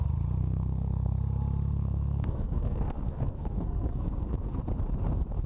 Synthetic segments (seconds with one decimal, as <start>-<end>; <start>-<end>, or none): 0.4-1.2; 1.7-4.6